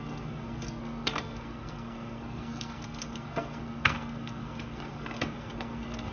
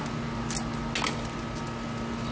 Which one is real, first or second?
second